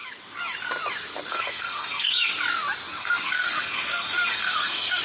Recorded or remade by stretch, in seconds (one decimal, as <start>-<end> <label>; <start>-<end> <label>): 0.0-1.3 recorded; 1.3-2.3 remade; 2.3-3.0 recorded; 3.0-5.0 remade